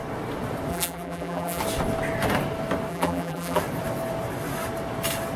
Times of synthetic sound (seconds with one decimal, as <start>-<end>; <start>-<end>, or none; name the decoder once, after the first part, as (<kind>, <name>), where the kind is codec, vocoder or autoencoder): 0.7-1.6 (vocoder, BigVGAN v2); 2.9-3.6